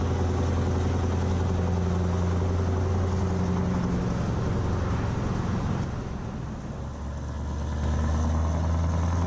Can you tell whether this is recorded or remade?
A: recorded